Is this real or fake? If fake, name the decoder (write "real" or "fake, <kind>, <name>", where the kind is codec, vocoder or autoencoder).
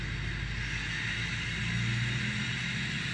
real